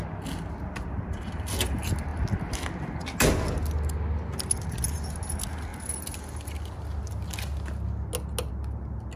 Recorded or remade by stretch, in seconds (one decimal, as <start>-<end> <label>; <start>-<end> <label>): 0.0-9.2 recorded